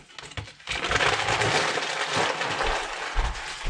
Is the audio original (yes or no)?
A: yes